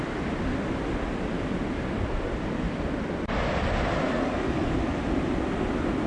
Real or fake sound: real